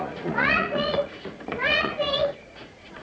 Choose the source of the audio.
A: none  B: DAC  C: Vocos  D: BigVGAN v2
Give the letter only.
C